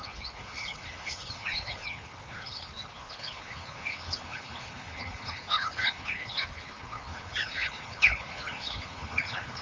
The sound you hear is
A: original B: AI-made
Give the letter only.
B